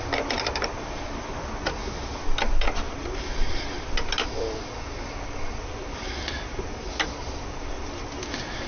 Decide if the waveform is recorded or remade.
recorded